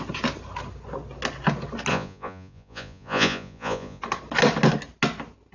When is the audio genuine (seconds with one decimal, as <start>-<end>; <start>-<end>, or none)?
0.0-1.9; 4.0-5.5